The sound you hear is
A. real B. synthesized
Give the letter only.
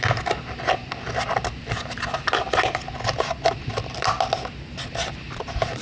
A